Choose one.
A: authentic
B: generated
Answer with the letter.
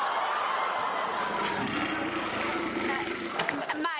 A